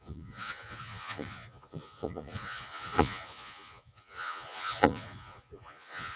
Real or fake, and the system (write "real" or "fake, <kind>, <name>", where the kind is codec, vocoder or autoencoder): fake, vocoder, Vocos